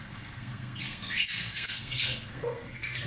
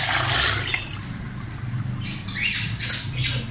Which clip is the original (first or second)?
second